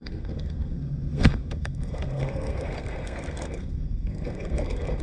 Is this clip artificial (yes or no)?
yes